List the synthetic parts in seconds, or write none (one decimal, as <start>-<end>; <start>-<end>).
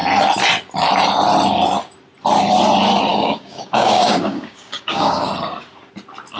3.1-5.3